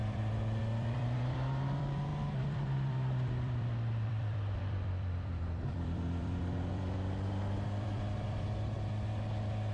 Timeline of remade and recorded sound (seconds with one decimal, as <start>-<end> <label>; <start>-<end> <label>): 0.0-9.7 remade